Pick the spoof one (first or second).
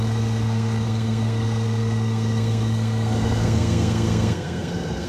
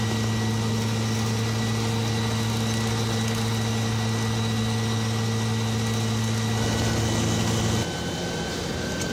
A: first